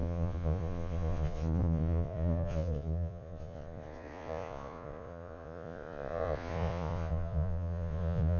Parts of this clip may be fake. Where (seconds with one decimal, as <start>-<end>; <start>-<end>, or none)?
0.0-8.4